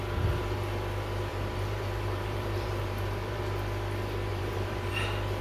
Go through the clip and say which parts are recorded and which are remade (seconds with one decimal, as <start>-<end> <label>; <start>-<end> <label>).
0.0-1.3 recorded; 1.3-3.4 remade; 3.4-4.3 recorded; 4.3-4.9 remade; 4.9-5.4 recorded